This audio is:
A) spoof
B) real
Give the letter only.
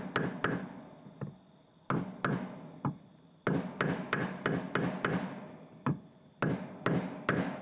B